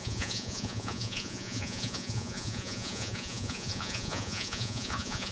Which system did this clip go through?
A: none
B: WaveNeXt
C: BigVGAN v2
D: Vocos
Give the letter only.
D